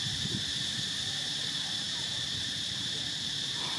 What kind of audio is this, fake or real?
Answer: fake